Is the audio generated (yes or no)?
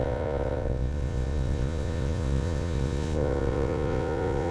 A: yes